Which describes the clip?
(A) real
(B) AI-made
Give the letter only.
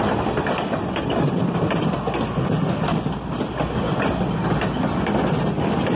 A